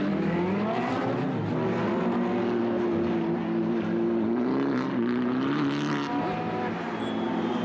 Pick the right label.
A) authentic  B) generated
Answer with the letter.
A